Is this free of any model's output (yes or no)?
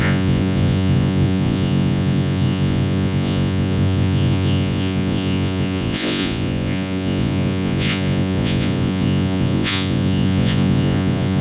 no